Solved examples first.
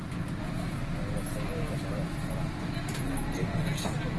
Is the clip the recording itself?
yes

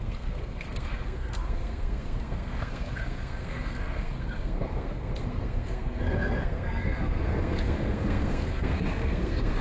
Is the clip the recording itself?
no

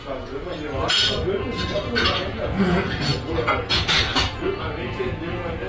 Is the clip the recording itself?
no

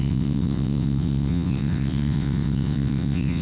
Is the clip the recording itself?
no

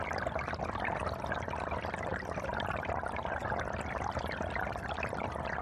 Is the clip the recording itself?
yes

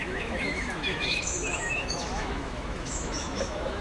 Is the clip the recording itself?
no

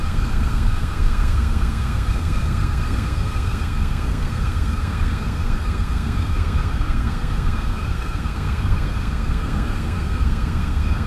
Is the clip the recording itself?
no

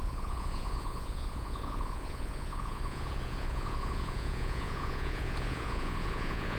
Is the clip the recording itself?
no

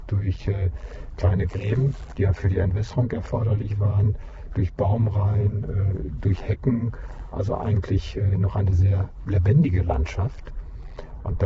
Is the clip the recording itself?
no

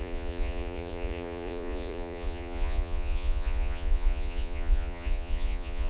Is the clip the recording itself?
no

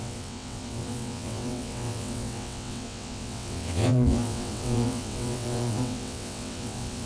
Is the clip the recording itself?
no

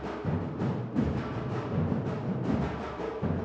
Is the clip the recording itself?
no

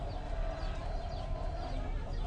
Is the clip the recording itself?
yes